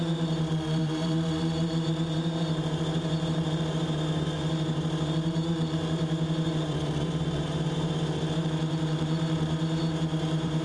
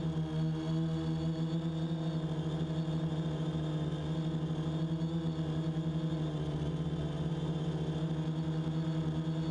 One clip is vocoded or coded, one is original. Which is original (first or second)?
second